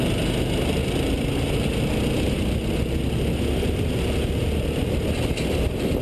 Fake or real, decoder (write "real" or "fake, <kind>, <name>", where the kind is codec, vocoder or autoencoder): real